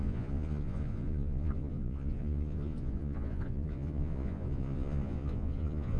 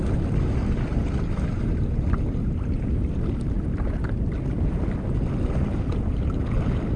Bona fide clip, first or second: second